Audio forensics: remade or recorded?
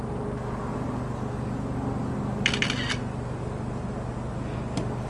recorded